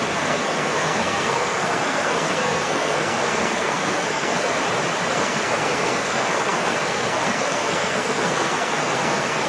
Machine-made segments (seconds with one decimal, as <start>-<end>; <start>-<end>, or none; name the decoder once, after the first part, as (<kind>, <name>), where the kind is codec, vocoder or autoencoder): 0.0-4.6 (codec, SNAC); 5.1-9.5